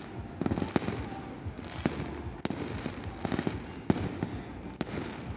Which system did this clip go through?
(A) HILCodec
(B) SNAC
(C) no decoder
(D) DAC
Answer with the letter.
C